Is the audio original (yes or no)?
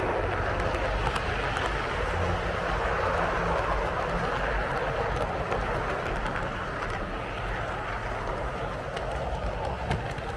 yes